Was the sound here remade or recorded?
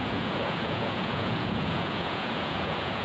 remade